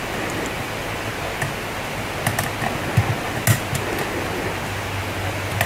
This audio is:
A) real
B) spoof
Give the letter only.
A